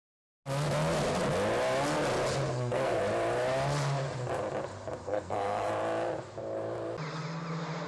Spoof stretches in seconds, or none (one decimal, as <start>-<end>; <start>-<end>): 2.5-3.0; 5.0-5.7